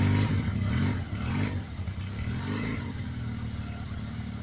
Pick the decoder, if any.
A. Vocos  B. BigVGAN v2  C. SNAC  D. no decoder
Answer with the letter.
D